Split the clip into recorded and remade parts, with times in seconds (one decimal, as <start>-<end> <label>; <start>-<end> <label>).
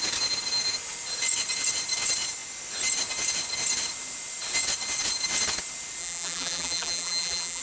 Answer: 0.0-6.0 recorded; 6.0-7.6 remade